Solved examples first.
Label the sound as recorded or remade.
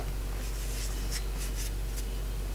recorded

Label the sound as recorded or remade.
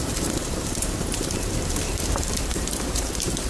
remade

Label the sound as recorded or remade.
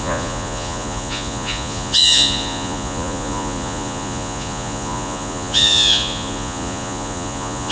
remade